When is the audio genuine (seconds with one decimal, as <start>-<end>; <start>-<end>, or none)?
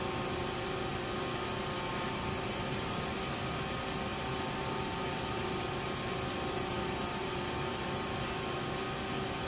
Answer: 0.0-9.5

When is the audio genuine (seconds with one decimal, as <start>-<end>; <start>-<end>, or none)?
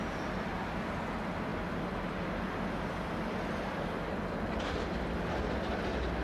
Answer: 0.0-6.2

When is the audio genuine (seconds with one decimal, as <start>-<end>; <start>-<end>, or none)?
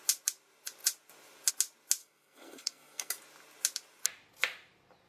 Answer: 0.0-2.0; 3.1-5.1